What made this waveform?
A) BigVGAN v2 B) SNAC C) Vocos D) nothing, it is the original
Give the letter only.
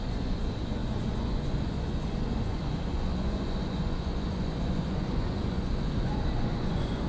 C